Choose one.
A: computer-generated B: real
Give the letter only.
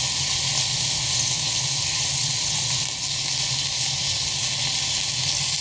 B